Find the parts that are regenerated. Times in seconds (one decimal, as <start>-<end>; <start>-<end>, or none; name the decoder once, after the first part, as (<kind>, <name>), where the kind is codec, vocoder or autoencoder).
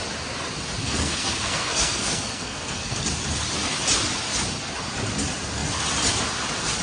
0.8-3.0 (codec, SNAC)